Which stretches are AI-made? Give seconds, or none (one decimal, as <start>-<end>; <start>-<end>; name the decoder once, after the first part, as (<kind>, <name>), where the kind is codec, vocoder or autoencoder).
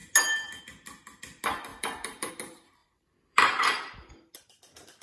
1.7-2.3 (vocoder, BigVGAN v2); 2.8-4.1